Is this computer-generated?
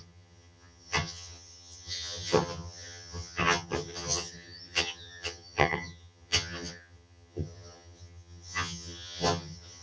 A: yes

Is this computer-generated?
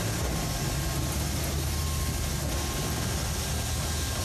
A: no